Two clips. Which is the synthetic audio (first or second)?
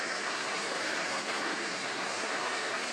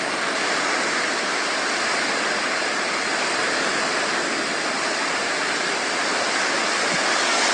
first